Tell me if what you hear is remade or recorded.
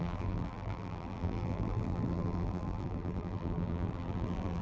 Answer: remade